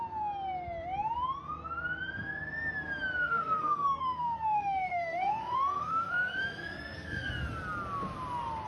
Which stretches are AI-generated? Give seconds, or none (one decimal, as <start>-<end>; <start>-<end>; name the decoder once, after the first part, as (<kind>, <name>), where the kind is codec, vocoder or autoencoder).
3.2-7.3 (codec, SNAC)